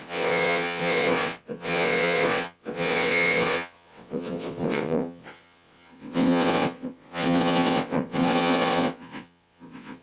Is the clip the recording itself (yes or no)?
no